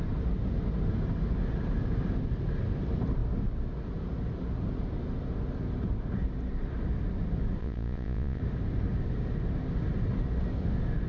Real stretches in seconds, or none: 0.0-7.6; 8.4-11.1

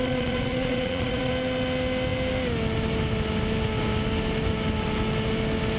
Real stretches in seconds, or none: 1.3-5.8